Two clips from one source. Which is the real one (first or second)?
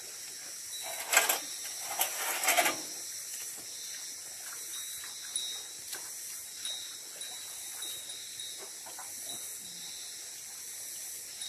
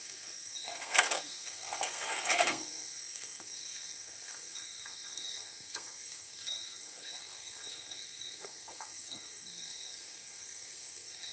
first